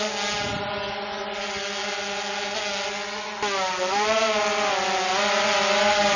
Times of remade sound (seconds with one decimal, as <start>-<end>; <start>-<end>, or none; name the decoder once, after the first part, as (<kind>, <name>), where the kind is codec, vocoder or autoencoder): none